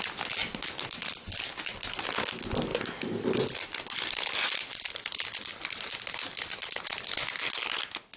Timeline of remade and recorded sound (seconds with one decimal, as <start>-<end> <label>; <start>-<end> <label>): 0.0-8.2 recorded